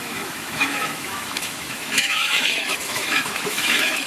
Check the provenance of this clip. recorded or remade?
remade